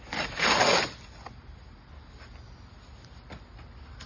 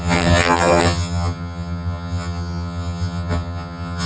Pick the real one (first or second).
first